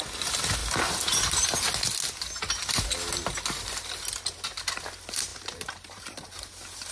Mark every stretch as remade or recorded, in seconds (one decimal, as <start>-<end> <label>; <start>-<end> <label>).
0.0-5.3 recorded; 5.3-6.3 remade; 6.3-6.9 recorded